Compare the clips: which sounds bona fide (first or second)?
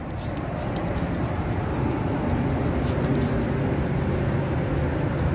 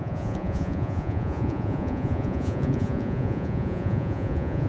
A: first